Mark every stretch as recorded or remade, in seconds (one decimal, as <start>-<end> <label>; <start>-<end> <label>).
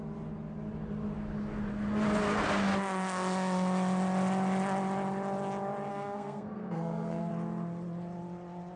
0.0-5.9 recorded; 5.9-7.3 remade; 7.3-8.8 recorded